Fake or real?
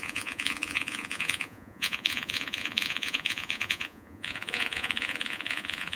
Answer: fake